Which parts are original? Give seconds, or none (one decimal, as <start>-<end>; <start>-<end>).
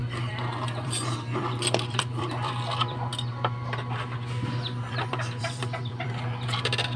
3.1-4.6